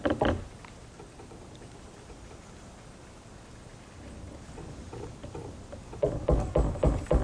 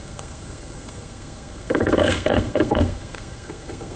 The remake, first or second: second